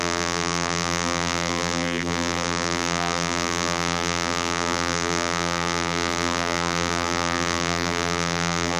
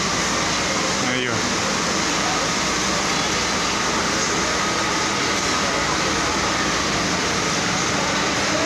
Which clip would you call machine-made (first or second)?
first